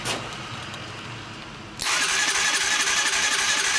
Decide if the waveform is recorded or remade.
recorded